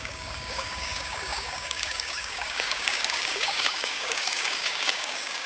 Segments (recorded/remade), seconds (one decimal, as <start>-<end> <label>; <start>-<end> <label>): 0.0-5.5 remade